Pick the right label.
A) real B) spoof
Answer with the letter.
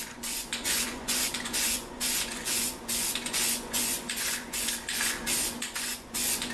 B